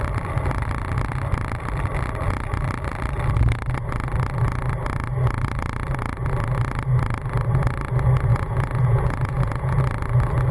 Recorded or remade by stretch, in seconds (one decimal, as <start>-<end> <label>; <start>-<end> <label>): 0.0-8.3 recorded; 8.3-9.8 remade; 9.8-10.5 recorded